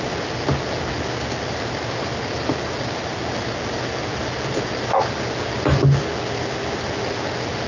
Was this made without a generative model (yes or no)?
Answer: yes